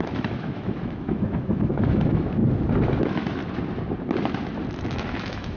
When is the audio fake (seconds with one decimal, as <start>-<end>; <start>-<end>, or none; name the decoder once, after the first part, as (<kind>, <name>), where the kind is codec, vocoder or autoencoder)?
0.0-2.4 (autoencoder, DAC-VAE); 3.0-3.4; 4.9-5.6

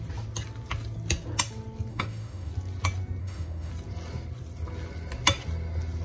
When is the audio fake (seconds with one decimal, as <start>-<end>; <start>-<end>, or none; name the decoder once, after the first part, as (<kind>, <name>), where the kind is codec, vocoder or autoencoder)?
1.9-2.5 (autoencoder, DAC-VAE); 3.2-3.7

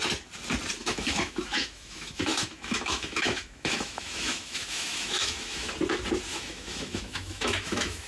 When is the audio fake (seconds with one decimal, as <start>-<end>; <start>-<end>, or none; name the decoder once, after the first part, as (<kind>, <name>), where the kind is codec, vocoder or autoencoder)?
0.8-5.7 (autoencoder, DAC-VAE); 6.3-8.1